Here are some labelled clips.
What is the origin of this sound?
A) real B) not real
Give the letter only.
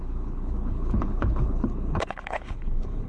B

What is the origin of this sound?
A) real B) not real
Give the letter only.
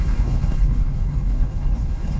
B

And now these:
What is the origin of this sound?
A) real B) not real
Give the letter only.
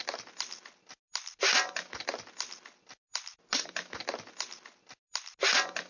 A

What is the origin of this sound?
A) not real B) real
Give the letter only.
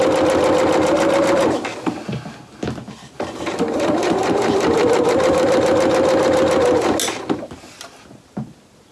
B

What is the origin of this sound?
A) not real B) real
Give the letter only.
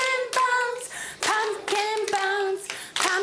B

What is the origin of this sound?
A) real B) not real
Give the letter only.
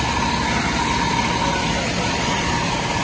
A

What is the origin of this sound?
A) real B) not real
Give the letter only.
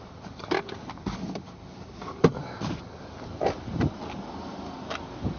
A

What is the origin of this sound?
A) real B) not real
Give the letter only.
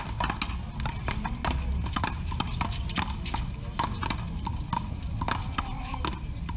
A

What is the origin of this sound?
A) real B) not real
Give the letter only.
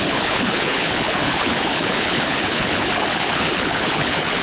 B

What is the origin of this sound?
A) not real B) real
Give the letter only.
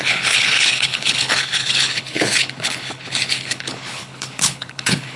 A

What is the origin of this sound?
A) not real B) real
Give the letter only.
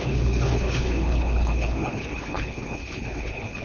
A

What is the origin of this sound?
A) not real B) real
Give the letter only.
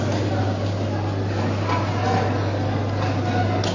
B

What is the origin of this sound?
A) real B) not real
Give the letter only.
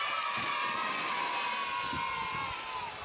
A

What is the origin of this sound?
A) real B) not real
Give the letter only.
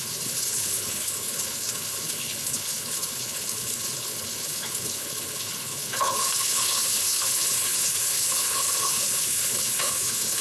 B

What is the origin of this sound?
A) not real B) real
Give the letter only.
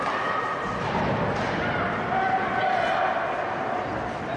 B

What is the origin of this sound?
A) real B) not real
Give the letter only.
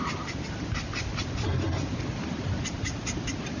A